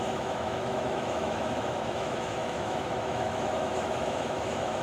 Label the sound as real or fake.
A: fake